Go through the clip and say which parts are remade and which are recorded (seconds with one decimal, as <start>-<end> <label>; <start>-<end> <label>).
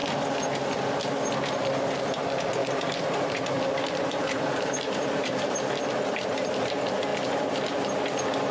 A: 0.0-2.6 recorded; 2.6-5.8 remade; 5.8-8.5 recorded